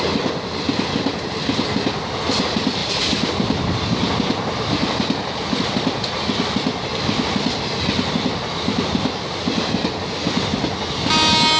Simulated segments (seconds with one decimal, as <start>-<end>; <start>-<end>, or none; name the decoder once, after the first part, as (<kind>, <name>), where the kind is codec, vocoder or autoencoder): none